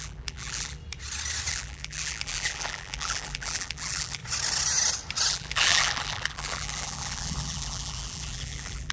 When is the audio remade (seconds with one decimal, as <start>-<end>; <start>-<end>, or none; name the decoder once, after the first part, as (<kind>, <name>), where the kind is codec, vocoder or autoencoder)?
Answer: 0.0-0.8 (vocoder, BigVGAN v2); 1.5-4.2; 5.3-8.9